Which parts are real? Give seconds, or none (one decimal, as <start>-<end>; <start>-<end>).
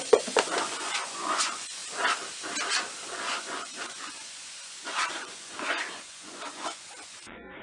1.8-3.1